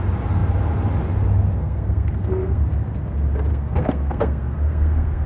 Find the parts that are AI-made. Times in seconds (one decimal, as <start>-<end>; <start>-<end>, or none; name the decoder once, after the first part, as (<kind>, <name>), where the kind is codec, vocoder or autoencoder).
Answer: 1.6-2.6 (codec, SNAC); 3.5-5.3